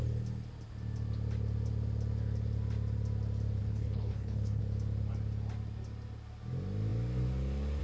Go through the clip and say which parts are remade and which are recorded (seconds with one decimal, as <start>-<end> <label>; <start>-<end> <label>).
0.0-3.6 recorded; 3.6-4.6 remade; 4.6-7.8 recorded